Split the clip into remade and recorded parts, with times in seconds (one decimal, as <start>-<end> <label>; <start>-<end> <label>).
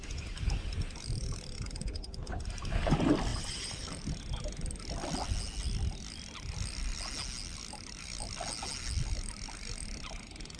0.0-3.3 recorded; 3.3-4.1 remade; 4.1-10.6 recorded